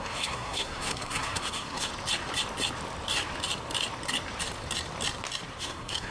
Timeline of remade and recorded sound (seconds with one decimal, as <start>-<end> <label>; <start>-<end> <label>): 0.0-1.9 remade; 1.9-5.6 recorded; 5.6-6.1 remade